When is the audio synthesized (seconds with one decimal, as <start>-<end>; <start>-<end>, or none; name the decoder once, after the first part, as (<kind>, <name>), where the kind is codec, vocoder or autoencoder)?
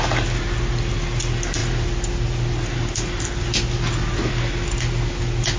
none